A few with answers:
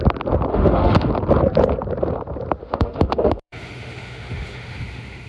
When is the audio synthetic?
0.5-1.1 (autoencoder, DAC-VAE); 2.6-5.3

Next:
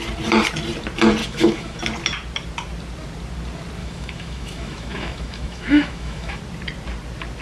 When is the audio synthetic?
1.2-1.8 (autoencoder, DAC-VAE); 3.8-6.4

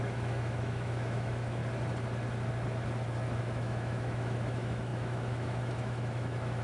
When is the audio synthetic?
0.0-1.6 (autoencoder, DAC-VAE); 3.4-6.6

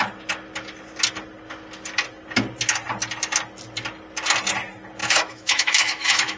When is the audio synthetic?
5.0-6.4 (autoencoder, DAC-VAE)

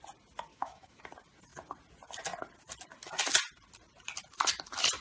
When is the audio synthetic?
0.5-1.0 (autoencoder, DAC-VAE)

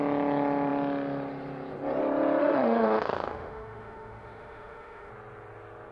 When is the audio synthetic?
2.4-5.1 (autoencoder, DAC-VAE)

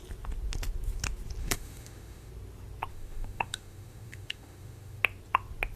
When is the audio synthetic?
1.4-2.3 (autoencoder, DAC-VAE); 2.9-5.0

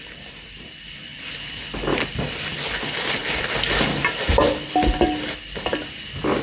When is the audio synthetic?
none